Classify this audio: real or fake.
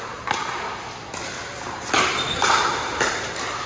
real